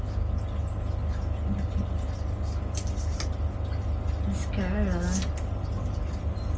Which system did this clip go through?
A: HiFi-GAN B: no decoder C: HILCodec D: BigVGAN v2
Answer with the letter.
B